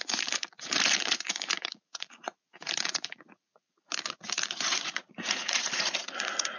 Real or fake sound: fake